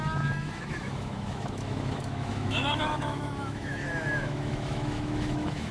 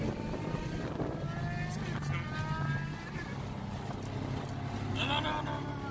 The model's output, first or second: first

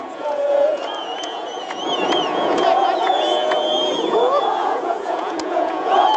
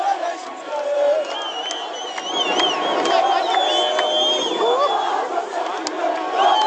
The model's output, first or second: first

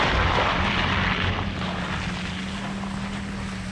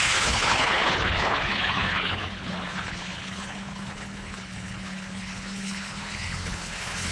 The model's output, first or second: second